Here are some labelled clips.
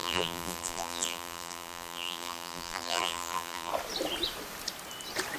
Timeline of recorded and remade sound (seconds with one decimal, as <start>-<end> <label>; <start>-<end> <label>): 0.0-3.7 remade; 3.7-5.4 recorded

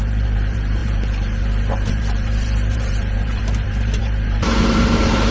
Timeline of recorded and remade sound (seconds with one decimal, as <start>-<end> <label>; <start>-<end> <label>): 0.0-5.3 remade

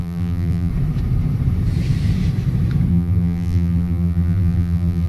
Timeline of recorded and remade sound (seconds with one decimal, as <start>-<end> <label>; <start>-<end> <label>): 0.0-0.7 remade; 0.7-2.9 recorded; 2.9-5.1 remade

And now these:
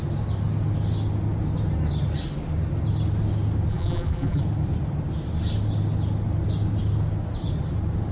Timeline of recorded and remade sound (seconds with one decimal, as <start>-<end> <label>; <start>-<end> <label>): 0.0-3.7 recorded; 3.7-4.4 remade; 4.4-8.1 recorded

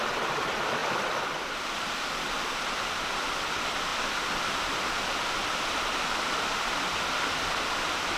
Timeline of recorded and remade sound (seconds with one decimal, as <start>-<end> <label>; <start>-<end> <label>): 0.0-0.8 recorded; 0.8-3.0 remade; 3.0-3.9 recorded; 3.9-6.7 remade; 6.7-8.2 recorded

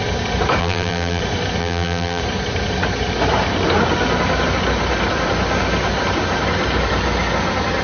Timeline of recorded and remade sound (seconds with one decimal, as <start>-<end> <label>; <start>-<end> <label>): 0.0-0.6 recorded; 0.6-1.2 remade; 1.2-1.6 recorded; 1.6-2.2 remade; 2.2-7.8 recorded